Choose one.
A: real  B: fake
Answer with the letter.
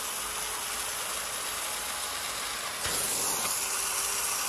A